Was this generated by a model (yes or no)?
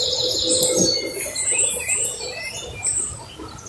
no